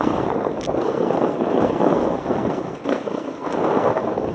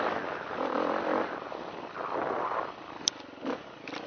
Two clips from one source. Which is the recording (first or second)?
second